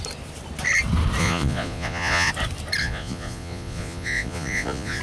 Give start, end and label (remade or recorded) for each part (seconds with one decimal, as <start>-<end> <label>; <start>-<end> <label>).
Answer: 0.0-1.2 recorded; 1.2-2.3 remade; 2.3-2.8 recorded; 2.8-5.0 remade

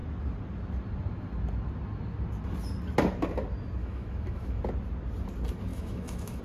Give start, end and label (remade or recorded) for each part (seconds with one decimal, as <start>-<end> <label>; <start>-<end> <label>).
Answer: 0.0-3.8 recorded; 3.8-4.6 remade; 4.6-5.7 recorded; 5.7-6.4 remade